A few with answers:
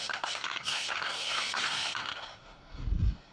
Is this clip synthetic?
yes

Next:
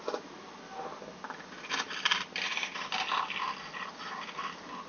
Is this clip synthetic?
no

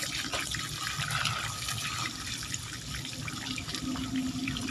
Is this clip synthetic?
no